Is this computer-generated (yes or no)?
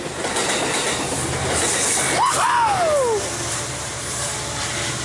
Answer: no